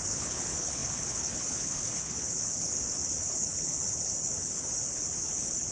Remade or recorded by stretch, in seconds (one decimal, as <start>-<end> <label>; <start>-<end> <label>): 0.0-5.7 remade